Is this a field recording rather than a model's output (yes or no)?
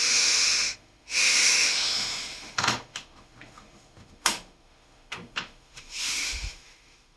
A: no